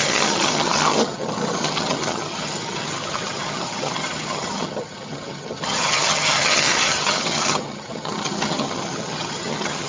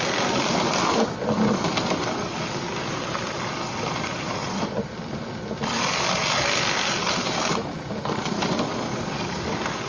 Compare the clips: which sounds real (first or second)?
second